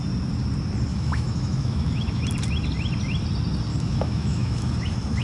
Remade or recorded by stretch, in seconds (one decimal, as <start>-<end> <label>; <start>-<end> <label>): 0.0-0.9 recorded; 0.9-2.2 remade; 2.2-3.7 recorded; 3.7-4.7 remade; 4.7-5.2 recorded